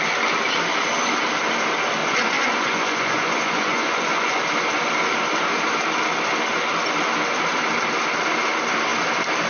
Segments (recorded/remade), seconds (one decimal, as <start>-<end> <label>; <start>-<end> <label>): 0.0-2.0 recorded; 2.0-4.4 remade; 4.4-9.5 recorded